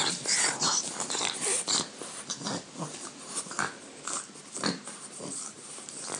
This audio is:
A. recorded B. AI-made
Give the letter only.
A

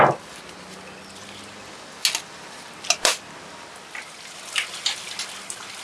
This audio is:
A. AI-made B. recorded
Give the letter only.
B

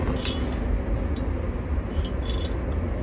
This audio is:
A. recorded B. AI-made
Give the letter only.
A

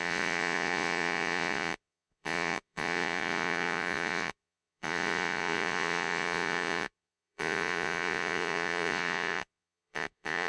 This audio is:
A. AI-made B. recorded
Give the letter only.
A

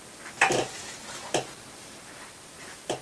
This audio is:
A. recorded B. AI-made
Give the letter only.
A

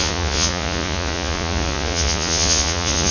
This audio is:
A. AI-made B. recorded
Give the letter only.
A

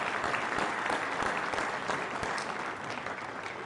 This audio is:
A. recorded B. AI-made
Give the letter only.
A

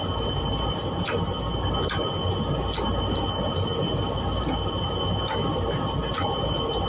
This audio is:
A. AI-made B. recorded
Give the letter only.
B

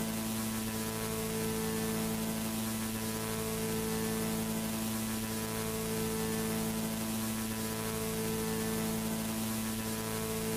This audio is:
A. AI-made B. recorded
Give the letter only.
B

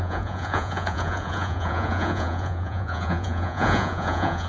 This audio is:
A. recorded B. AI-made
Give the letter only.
B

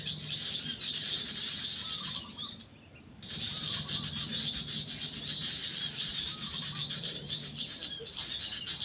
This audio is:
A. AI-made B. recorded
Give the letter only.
B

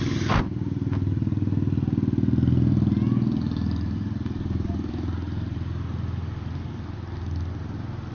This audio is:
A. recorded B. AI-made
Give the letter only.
A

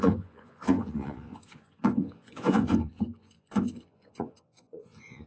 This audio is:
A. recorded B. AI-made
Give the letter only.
B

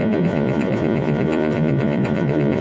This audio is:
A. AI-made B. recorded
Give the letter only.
A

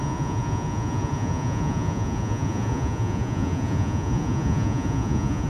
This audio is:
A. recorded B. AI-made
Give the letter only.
B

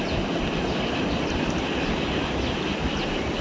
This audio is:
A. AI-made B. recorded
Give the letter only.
B